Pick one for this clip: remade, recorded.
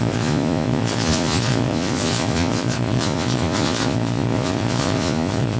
remade